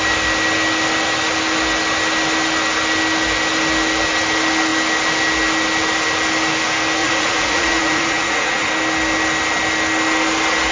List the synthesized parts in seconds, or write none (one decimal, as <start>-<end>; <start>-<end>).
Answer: 7.0-8.7

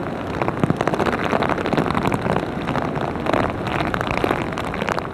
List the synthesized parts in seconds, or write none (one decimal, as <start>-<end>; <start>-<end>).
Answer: 3.7-4.2

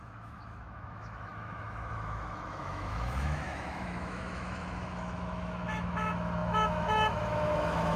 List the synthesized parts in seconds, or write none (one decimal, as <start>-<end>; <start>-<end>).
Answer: 0.0-8.0